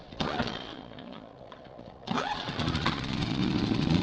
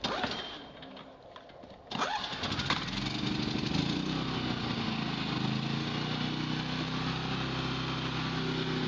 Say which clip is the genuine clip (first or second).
second